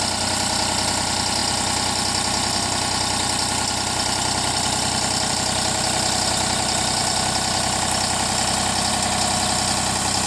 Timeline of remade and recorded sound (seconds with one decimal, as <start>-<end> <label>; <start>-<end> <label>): 0.0-10.3 recorded